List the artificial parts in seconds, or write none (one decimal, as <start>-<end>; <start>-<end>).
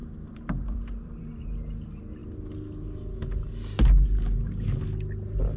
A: 0.0-1.3